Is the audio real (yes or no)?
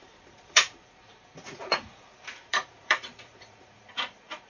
no